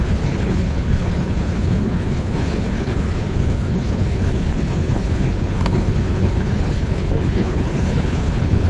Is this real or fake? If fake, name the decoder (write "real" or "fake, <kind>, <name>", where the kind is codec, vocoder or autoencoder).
fake, codec, HILCodec